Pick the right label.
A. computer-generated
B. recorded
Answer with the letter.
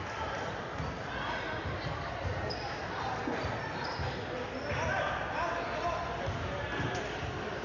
B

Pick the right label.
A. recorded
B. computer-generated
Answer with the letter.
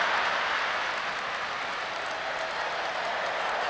A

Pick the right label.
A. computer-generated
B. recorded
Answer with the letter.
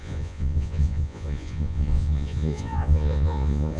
A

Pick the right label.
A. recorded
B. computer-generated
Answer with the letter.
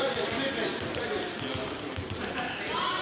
A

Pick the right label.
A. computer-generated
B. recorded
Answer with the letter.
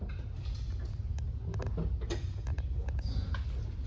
B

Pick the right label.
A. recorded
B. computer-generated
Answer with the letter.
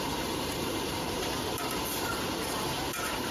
B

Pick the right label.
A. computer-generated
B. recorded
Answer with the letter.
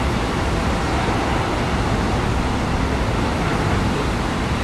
B